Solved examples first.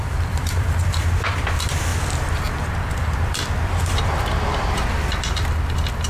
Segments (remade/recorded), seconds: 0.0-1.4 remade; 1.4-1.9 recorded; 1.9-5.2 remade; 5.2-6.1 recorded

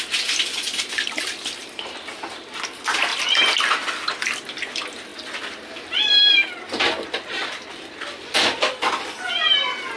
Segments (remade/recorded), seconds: 0.0-3.1 recorded; 3.1-3.7 remade; 3.7-5.1 recorded; 5.1-9.3 remade; 9.3-10.0 recorded